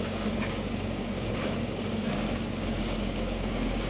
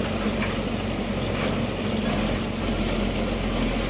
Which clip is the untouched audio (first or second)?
second